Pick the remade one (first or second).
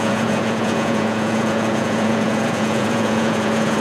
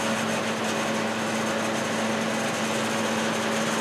first